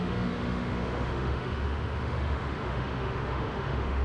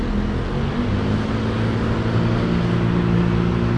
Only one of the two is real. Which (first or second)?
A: second